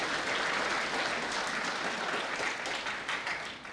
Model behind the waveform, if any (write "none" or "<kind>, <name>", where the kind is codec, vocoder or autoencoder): none